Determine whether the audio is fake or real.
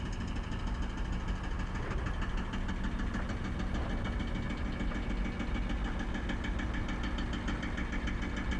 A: real